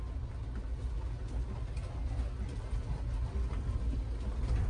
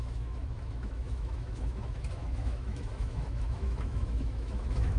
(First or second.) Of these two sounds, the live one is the first